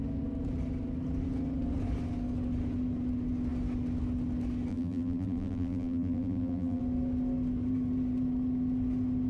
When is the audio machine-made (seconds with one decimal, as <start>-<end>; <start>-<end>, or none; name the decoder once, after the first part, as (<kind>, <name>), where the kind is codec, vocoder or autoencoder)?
4.7-6.8 (vocoder, BigVGAN v2)